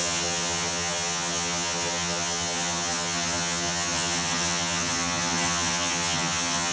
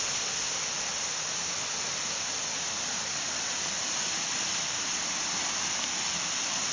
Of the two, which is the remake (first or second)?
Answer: first